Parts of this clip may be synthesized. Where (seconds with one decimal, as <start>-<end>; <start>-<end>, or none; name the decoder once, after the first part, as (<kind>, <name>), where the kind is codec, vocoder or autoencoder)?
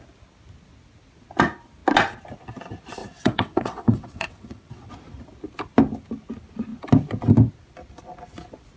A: 3.0-4.9 (vocoder, WaveNeXt)